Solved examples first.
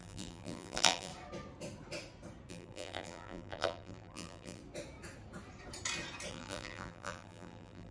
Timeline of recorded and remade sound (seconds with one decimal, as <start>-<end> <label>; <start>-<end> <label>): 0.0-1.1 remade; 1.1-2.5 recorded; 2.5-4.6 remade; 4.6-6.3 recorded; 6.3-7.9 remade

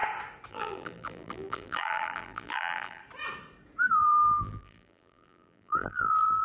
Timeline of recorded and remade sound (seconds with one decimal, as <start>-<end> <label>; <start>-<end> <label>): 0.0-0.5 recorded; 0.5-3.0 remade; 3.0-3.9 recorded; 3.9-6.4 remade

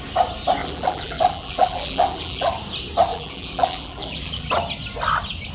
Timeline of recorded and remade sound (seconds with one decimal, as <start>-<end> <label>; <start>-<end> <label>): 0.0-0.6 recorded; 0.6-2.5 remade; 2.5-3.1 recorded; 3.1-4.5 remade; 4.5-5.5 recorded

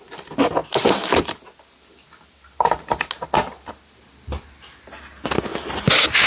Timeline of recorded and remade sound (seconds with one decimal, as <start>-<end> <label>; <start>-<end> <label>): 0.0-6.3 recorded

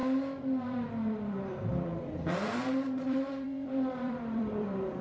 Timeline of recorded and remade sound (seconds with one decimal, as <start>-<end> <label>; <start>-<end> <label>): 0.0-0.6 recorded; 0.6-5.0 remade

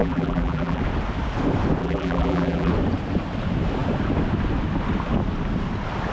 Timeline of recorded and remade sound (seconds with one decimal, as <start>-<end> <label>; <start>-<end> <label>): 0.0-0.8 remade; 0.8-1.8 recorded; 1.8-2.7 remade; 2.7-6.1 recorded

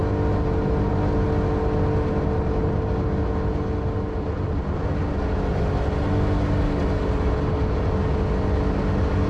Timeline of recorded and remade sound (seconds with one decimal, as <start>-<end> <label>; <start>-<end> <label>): 0.0-9.3 recorded

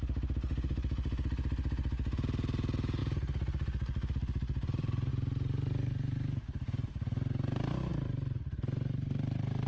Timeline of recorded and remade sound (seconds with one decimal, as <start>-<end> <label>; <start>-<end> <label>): 0.0-3.0 recorded; 3.0-5.1 remade; 5.1-7.9 recorded; 7.9-8.6 remade; 8.6-9.7 recorded